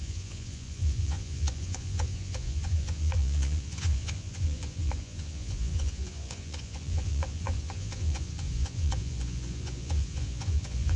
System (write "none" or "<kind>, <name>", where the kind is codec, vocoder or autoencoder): vocoder, Vocos